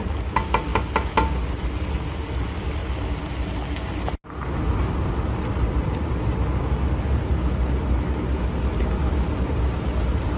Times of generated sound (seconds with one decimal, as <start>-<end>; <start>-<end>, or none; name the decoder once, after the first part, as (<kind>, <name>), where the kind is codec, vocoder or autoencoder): none